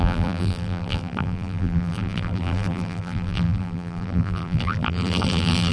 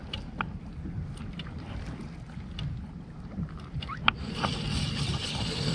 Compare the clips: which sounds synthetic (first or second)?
first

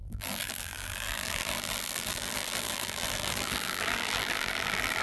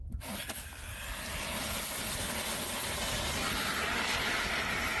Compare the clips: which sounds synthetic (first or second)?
first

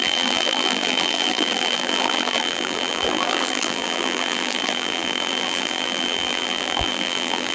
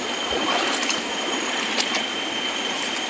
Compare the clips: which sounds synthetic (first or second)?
first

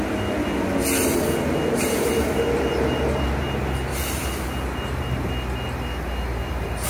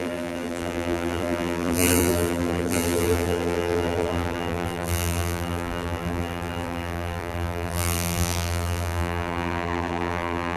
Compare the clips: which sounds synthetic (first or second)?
second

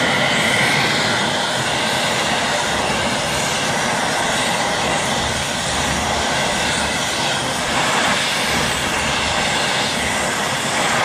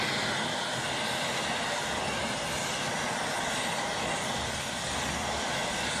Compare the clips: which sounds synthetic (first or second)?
first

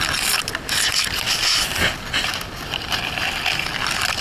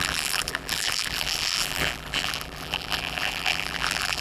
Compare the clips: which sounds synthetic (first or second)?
second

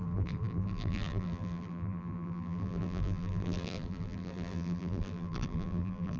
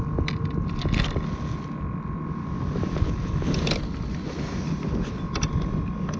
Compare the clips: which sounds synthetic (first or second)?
first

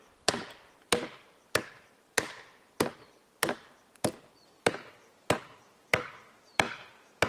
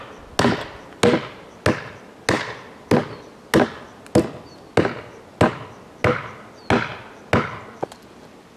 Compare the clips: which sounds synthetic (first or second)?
first